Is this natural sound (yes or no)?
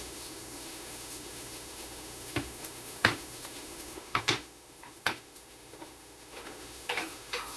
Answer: no